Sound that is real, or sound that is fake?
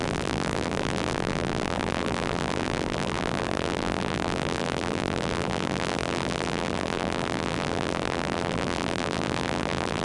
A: fake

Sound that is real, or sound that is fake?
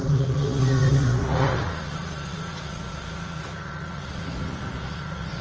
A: fake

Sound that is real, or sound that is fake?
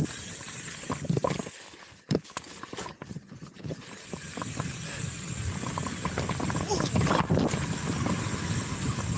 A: real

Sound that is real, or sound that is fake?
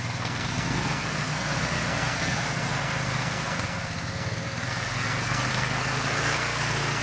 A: fake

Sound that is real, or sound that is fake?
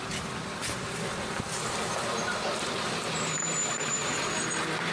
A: fake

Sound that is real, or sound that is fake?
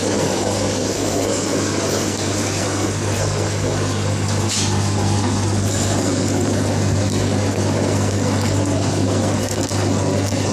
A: fake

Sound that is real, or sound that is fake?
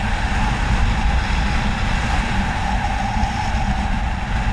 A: real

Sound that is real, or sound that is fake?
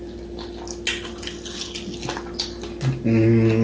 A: real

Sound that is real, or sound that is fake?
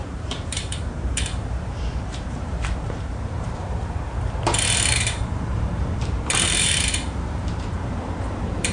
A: fake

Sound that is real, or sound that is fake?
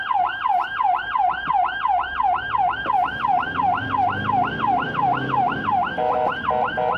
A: real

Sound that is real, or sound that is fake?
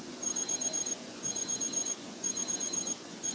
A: fake